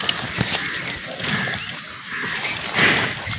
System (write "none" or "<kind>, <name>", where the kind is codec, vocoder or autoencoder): none